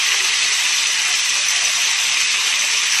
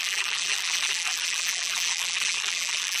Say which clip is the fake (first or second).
second